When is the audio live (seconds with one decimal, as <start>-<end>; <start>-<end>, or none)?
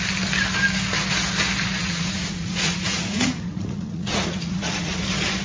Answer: 0.0-1.8; 5.0-5.4